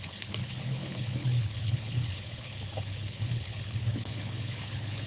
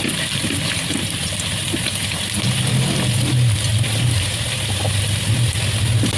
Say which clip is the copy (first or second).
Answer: first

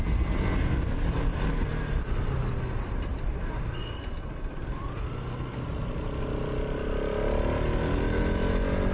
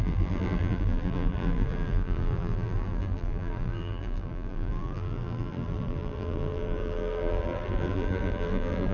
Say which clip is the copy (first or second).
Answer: second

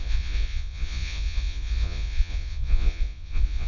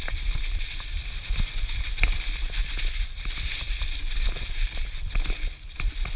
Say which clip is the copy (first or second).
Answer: first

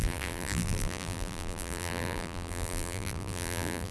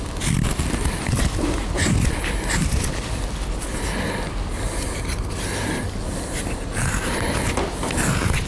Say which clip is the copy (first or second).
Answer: first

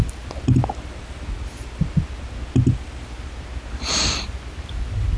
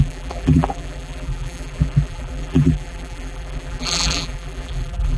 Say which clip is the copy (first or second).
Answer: second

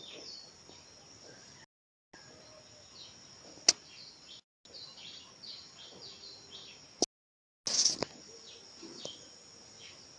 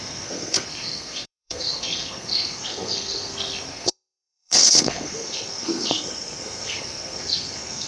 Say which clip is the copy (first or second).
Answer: second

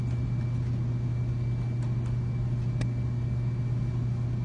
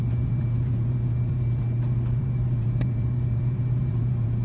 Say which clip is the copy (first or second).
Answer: second